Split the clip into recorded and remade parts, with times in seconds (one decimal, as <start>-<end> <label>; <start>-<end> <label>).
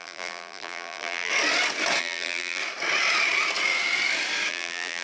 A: 0.0-1.3 remade; 1.3-2.0 recorded; 2.0-2.6 remade; 2.6-4.5 recorded; 4.5-5.0 remade